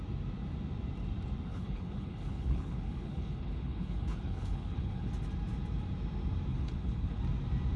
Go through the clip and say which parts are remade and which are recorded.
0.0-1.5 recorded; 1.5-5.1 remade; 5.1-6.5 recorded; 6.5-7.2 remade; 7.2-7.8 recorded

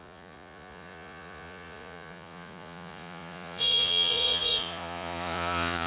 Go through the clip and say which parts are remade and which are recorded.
0.0-5.9 remade

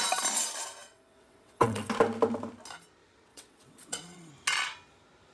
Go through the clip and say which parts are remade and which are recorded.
0.0-0.8 recorded; 0.8-1.9 remade; 1.9-3.3 recorded; 3.3-4.3 remade; 4.3-5.3 recorded